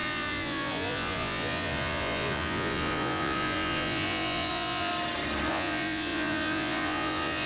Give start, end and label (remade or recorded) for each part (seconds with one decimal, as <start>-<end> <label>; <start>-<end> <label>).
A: 0.0-4.9 remade; 4.9-5.5 recorded; 5.5-7.5 remade